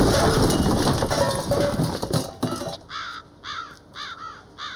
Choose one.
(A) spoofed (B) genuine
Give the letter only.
B